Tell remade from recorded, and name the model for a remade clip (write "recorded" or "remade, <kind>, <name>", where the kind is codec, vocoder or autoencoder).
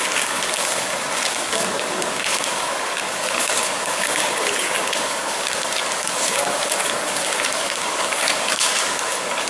remade, codec, DAC